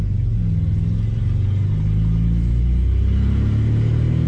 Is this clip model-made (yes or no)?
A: no